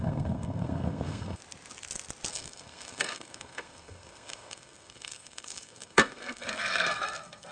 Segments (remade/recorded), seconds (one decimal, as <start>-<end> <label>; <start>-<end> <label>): 0.0-1.4 remade; 1.4-2.3 recorded; 2.3-7.5 remade